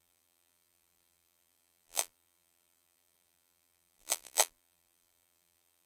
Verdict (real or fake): fake